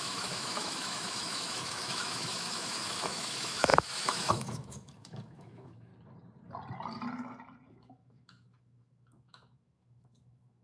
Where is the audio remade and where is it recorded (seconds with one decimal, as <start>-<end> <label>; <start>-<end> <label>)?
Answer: 0.0-5.9 remade; 5.9-7.7 recorded; 7.7-10.6 remade